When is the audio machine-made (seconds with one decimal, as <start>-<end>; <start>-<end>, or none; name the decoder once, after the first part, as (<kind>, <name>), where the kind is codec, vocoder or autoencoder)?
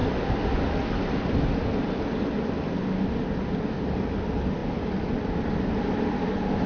none